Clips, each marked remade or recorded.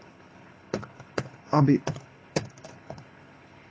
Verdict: remade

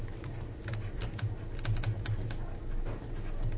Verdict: recorded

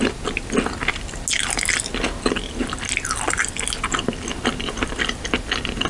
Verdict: recorded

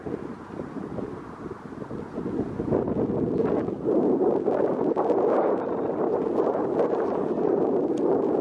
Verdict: recorded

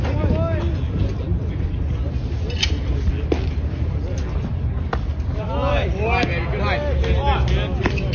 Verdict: recorded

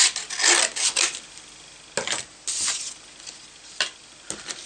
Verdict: recorded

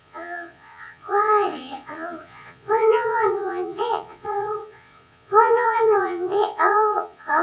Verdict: remade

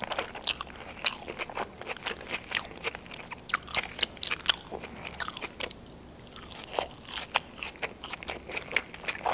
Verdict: recorded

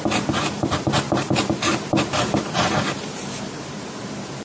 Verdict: remade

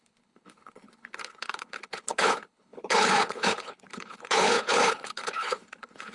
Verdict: remade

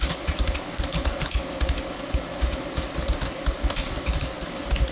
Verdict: recorded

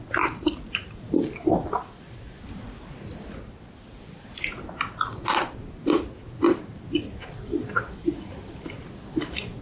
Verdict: recorded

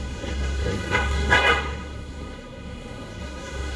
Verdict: remade